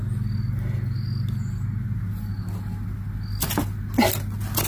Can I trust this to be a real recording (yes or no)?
yes